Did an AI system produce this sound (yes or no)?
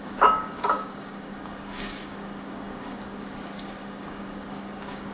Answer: yes